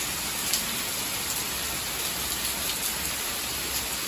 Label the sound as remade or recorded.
recorded